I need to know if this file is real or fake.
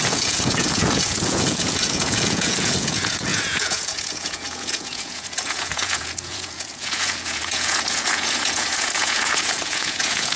fake